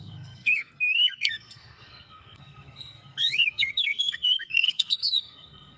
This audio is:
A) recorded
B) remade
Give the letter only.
B